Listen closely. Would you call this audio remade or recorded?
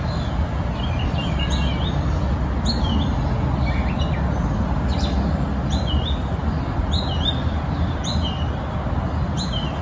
recorded